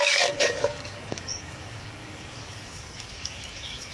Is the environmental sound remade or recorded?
remade